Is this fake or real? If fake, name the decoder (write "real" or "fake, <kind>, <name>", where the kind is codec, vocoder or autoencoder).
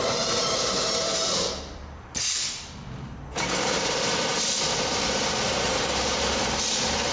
fake, vocoder, BigVGAN v2